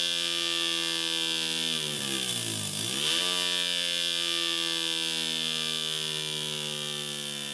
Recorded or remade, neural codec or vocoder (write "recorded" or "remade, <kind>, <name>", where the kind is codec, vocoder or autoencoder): recorded